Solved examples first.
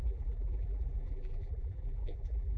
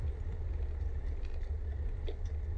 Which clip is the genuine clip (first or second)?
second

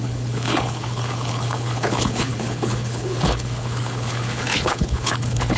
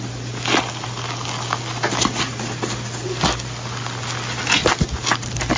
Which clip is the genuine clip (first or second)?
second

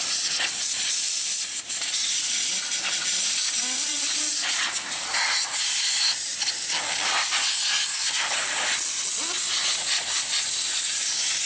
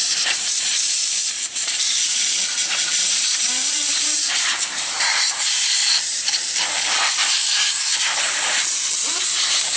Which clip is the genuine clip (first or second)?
first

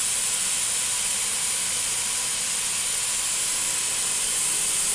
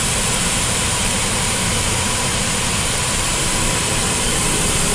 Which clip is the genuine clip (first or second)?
first